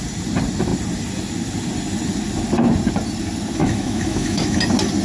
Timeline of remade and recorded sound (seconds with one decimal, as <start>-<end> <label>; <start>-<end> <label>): 0.0-3.6 recorded; 3.6-4.6 remade; 4.6-5.0 recorded